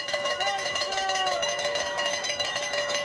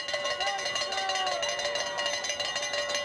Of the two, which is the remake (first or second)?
first